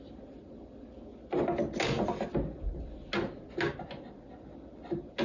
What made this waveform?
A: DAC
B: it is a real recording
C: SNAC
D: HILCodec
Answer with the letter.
B